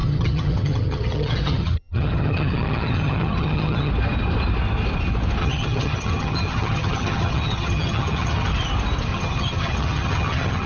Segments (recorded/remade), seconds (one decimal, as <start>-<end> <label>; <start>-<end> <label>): 0.0-3.9 remade; 3.9-5.4 recorded; 5.4-8.5 remade; 8.5-9.1 recorded; 9.1-10.7 remade